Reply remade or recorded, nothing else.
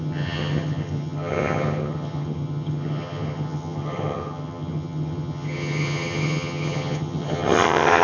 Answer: remade